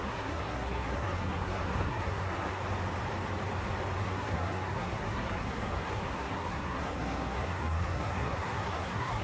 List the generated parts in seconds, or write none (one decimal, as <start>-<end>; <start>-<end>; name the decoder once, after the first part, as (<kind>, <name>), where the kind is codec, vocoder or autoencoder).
0.0-2.6 (codec, SNAC); 4.0-9.2